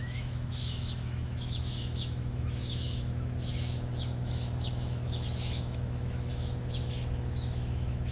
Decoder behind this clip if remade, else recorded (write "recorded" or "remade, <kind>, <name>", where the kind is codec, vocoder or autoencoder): remade, autoencoder, DAC-VAE